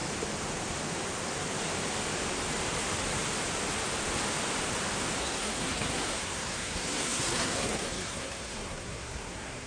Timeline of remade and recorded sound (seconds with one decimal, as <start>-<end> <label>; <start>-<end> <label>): 0.0-5.2 recorded; 5.2-9.7 remade